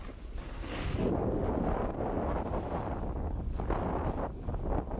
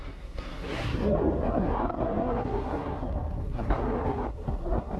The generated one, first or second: second